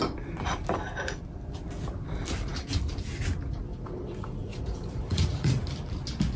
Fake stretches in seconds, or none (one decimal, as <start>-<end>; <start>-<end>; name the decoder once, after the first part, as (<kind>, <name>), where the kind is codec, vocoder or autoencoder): 3.7-5.6 (vocoder, Vocos)

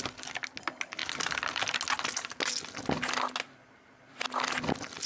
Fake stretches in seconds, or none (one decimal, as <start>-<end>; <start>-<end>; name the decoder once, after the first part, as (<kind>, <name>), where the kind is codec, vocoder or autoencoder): none

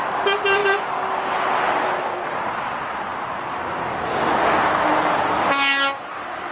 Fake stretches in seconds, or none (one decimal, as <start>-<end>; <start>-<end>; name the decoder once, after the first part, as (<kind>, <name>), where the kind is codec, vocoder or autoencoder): none